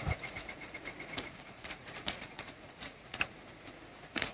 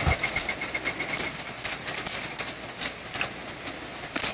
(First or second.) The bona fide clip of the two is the second